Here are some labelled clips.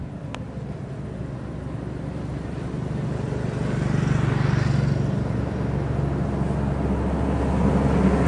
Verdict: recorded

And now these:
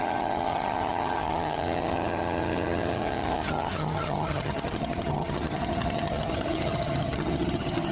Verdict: remade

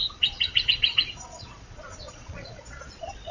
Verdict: remade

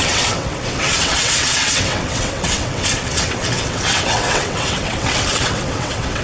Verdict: remade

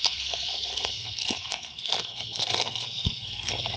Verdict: remade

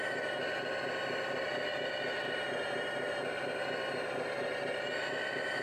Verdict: recorded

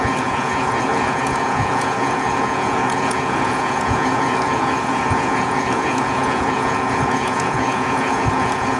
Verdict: remade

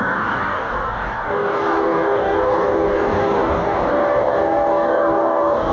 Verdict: remade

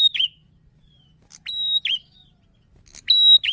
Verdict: recorded